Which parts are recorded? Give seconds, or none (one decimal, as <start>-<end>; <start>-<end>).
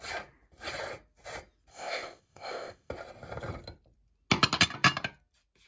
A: 0.0-1.7; 2.9-5.7